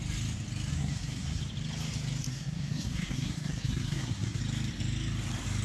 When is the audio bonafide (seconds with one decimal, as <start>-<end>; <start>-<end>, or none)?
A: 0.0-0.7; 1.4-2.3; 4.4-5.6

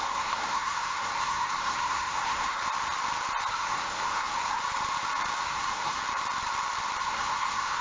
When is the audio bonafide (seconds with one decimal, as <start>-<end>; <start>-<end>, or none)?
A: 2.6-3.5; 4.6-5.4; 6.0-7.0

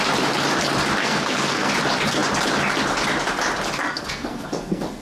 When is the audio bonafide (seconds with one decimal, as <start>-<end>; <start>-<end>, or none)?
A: 0.0-1.0; 1.7-3.8